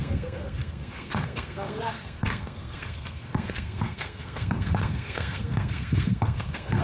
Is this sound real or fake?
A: fake